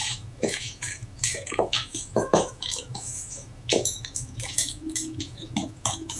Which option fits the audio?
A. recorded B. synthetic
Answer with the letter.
B